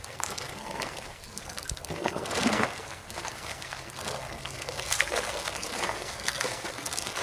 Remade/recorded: remade